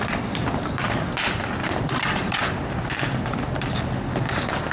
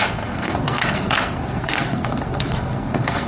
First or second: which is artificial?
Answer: second